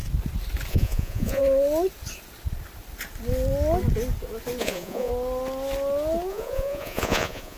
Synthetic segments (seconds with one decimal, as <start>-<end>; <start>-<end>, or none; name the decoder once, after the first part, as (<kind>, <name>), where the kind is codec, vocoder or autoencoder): 0.7-1.4 (vocoder, Vocos); 4.6-5.1; 6.3-7.6